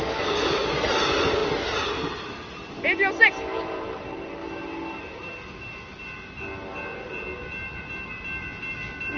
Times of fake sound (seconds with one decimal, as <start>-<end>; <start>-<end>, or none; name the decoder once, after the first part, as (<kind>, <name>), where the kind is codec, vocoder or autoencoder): none